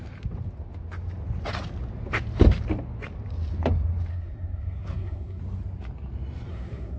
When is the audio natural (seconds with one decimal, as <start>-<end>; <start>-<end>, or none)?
0.0-4.1; 5.4-6.5